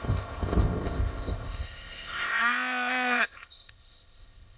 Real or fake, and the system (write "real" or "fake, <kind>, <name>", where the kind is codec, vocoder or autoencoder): fake, codec, ZipCodec